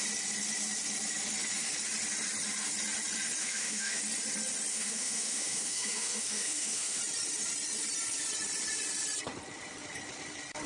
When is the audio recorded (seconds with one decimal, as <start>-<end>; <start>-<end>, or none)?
0.0-3.4; 4.0-4.7; 7.0-10.7